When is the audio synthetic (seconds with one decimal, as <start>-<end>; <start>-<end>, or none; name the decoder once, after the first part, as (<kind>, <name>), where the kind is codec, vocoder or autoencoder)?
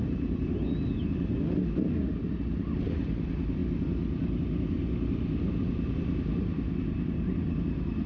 none